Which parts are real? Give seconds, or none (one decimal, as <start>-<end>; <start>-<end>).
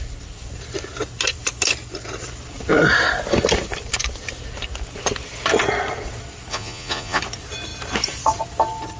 0.0-6.5; 7.2-9.0